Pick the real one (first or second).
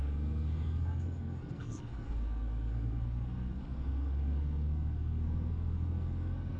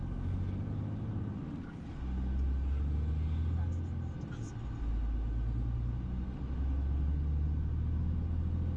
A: second